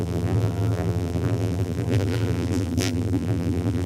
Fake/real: fake